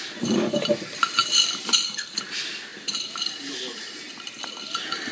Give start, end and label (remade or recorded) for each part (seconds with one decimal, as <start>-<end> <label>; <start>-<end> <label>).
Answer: 0.0-1.2 recorded; 1.2-2.2 remade; 2.2-2.7 recorded; 2.7-4.0 remade; 4.0-5.1 recorded